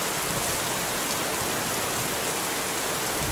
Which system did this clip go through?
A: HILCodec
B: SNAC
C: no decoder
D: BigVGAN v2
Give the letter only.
C